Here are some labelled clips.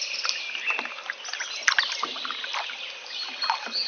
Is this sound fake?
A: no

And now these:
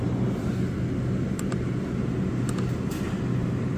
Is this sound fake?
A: no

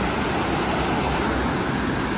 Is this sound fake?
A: no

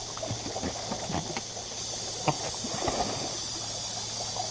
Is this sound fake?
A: no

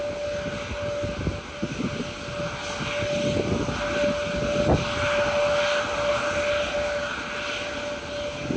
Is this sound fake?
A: no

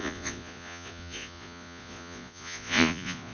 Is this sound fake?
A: yes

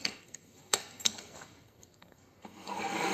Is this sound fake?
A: yes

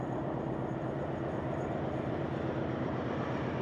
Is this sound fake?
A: yes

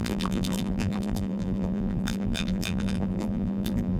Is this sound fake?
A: yes